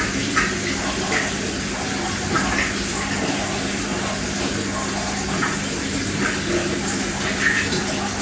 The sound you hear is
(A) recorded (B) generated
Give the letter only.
A